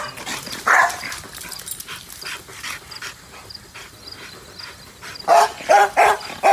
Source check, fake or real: real